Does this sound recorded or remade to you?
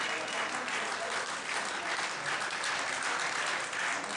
recorded